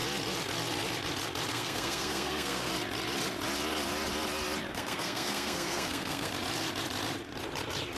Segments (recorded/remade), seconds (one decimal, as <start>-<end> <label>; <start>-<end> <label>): 0.0-1.5 recorded; 1.5-2.7 remade; 2.7-4.7 recorded; 4.7-6.3 remade; 6.3-8.0 recorded